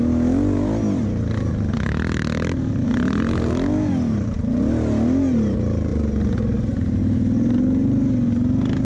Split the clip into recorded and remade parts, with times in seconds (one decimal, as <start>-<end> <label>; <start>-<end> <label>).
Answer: 0.0-8.8 recorded